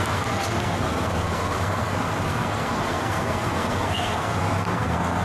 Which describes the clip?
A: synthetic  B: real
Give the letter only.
A